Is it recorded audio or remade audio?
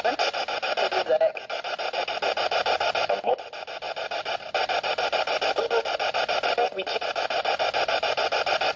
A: recorded